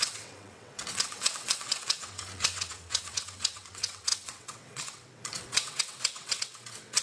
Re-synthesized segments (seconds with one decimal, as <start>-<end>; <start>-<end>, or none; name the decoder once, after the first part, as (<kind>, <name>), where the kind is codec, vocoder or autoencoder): 0.0-7.0 (vocoder, WaveNeXt)